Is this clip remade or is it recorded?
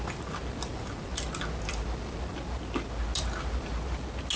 recorded